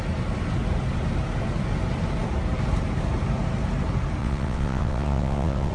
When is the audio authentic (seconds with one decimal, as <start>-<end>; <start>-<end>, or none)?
0.0-4.2